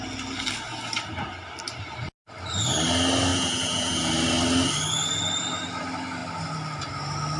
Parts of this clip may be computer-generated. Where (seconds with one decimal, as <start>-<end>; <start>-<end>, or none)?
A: 3.3-4.1

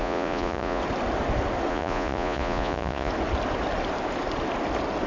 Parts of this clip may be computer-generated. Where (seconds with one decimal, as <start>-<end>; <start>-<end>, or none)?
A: 0.0-0.8; 1.7-3.1

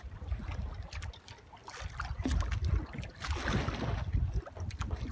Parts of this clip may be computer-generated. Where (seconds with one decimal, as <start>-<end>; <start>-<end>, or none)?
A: none

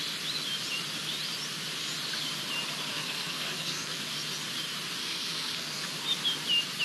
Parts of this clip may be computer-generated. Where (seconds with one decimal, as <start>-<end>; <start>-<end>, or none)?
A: 2.9-4.0; 5.0-5.9

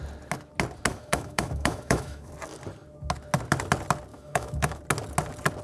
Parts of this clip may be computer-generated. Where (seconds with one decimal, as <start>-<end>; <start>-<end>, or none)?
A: 0.9-2.3; 4.1-4.8

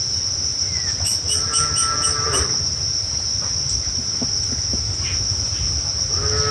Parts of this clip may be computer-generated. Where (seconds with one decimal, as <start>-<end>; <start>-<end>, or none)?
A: 0.5-4.3

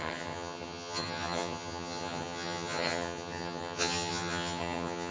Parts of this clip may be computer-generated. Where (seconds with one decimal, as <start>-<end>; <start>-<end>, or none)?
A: 0.0-5.1

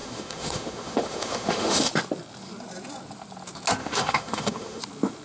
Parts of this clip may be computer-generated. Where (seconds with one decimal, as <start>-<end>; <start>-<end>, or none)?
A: 0.0-1.9; 3.8-4.8